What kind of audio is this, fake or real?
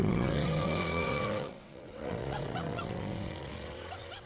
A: fake